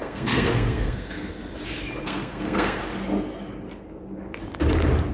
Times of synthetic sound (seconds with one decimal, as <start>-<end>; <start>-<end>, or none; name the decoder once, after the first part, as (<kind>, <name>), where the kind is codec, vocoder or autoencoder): 0.0-1.4 (codec, SNAC); 2.0-2.8